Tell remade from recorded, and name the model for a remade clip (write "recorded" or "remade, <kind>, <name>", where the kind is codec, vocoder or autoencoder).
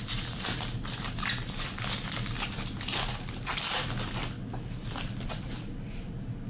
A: recorded